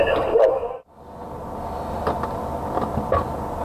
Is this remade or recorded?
recorded